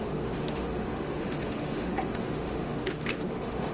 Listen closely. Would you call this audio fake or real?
fake